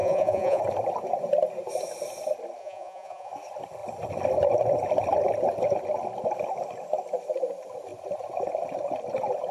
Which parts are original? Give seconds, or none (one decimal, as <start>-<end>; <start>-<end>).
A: 0.6-2.6; 3.3-9.5